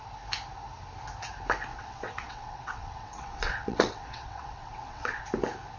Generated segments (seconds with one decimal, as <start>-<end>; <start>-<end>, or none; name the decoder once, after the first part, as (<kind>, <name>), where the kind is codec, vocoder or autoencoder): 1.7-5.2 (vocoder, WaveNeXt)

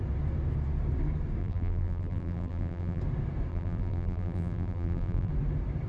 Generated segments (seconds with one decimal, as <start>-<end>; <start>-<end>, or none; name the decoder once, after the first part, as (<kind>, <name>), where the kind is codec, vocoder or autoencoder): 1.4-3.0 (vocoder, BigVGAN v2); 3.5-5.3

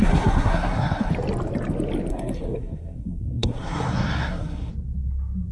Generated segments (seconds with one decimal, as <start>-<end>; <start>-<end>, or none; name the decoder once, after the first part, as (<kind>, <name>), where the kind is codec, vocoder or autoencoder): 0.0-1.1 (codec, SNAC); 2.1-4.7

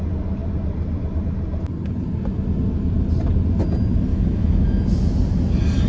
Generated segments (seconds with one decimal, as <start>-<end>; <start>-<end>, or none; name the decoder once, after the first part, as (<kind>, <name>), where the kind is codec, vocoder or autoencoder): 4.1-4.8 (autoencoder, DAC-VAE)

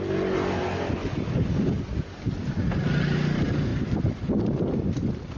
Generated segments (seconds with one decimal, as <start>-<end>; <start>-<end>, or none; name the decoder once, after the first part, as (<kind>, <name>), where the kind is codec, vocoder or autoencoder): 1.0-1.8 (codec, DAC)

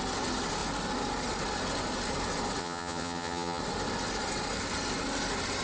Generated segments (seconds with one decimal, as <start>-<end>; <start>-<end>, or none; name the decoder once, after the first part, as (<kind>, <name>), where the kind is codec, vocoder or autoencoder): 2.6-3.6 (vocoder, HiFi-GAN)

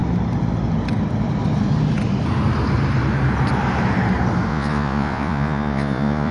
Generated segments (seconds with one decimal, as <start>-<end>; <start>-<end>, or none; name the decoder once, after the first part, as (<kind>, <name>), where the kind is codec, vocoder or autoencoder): 4.5-6.3 (vocoder, Vocos)

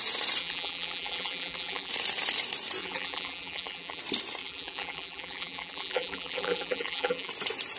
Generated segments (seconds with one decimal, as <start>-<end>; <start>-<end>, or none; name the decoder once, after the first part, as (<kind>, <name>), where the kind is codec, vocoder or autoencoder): 0.4-1.9 (vocoder, BigVGAN v2); 2.8-4.0; 4.4-7.3